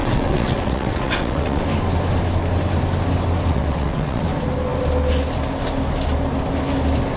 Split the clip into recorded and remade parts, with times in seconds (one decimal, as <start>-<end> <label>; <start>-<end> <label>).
0.0-1.6 remade; 1.6-3.5 recorded; 3.5-4.2 remade; 4.2-7.2 recorded